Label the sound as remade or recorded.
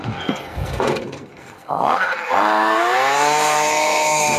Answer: remade